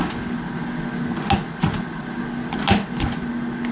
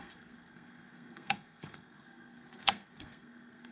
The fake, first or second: second